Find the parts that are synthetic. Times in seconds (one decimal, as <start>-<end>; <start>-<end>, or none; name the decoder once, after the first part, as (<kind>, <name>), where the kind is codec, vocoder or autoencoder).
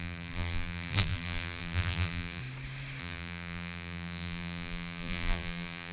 0.0-2.4 (vocoder, BigVGAN v2); 3.0-5.9